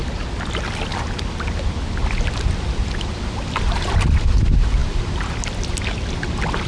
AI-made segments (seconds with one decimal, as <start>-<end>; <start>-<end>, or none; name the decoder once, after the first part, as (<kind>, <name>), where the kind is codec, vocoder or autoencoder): none